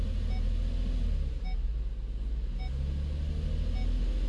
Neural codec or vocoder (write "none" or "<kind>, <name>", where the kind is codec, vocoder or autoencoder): none